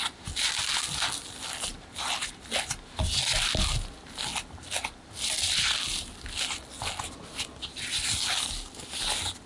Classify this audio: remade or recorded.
recorded